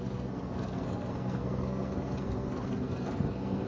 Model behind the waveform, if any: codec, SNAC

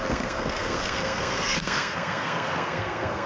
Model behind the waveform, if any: codec, SNAC